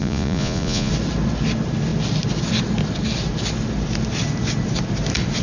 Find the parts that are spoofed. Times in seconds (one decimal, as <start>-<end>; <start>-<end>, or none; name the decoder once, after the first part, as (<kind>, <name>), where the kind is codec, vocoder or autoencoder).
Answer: 0.0-0.9 (vocoder, Vocos)